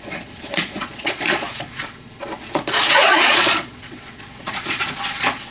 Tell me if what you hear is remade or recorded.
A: remade